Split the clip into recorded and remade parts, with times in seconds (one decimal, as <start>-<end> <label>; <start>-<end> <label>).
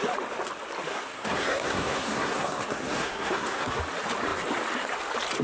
0.0-0.9 recorded; 0.9-3.8 remade; 3.8-5.4 recorded